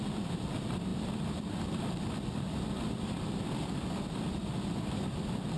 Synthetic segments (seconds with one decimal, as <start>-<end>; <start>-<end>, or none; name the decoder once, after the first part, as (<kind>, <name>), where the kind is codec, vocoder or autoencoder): none